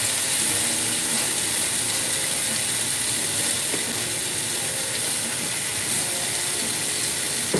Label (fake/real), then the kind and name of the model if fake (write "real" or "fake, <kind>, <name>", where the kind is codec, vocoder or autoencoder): real